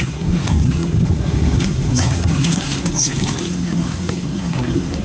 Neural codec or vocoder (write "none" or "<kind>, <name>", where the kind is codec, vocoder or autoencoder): codec, SNAC